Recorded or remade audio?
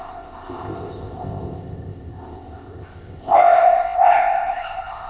remade